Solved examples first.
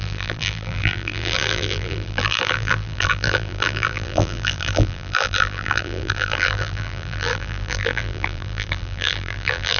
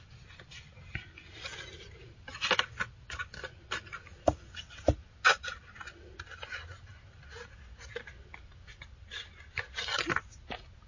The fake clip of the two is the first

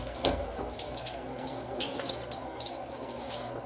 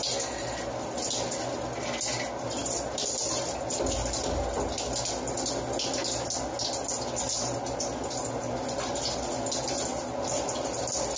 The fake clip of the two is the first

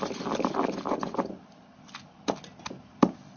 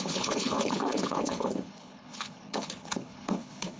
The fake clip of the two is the second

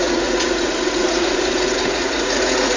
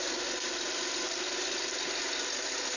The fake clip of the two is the first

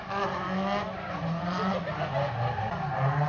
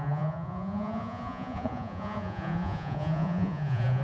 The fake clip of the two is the second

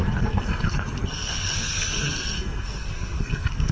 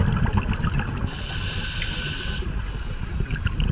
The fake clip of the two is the first